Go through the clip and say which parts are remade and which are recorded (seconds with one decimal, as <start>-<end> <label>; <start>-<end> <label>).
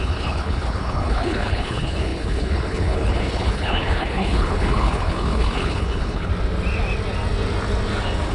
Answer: 0.0-6.3 remade; 6.3-8.3 recorded